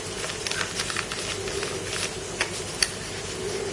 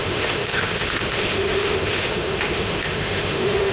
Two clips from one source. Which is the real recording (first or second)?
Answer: first